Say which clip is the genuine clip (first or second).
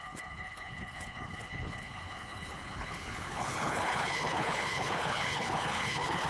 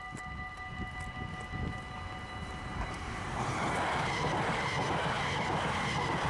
second